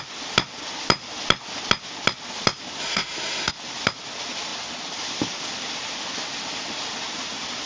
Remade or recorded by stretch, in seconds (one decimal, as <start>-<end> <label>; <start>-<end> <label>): 0.0-2.8 recorded; 2.8-3.5 remade; 3.5-7.7 recorded